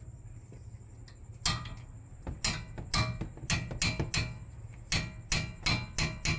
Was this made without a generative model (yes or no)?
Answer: yes